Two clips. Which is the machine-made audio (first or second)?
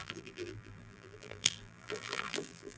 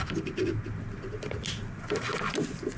first